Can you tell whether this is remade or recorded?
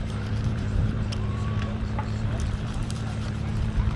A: remade